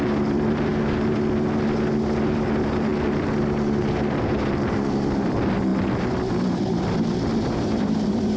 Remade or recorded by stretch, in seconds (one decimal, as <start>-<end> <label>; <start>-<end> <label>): 0.0-0.7 remade; 0.7-2.0 recorded; 2.0-2.9 remade; 2.9-4.4 recorded; 4.4-8.4 remade